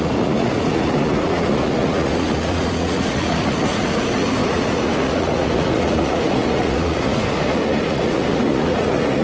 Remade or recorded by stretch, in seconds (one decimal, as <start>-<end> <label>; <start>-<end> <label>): 0.0-9.2 remade